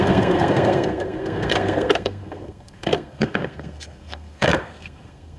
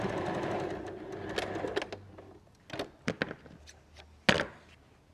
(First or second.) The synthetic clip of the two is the first